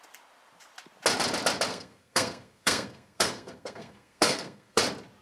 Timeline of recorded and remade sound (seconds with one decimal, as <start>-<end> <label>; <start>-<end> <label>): 0.0-1.7 recorded; 1.7-4.8 remade; 4.8-5.2 recorded